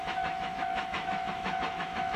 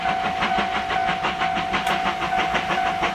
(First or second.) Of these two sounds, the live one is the second